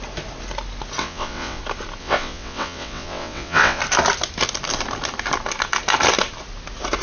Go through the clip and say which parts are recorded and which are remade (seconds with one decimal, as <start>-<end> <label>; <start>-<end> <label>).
0.0-1.0 recorded; 1.0-1.6 remade; 1.6-2.0 recorded; 2.0-3.8 remade; 3.8-7.0 recorded